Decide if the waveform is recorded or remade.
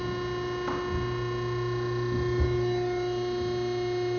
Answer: recorded